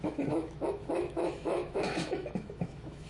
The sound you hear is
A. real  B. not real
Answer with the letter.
B